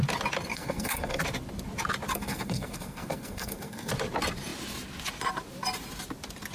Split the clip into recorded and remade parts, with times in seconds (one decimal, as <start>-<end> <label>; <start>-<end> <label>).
0.0-0.5 recorded; 0.5-1.2 remade; 1.2-2.1 recorded; 2.1-3.9 remade; 3.9-6.5 recorded